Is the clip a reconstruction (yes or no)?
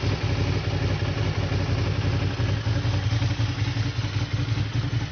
no